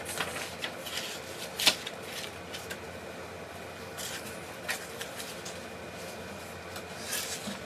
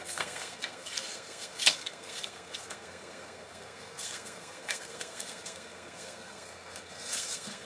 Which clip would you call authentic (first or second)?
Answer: first